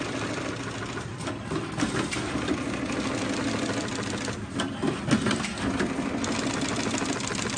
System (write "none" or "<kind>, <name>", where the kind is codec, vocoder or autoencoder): none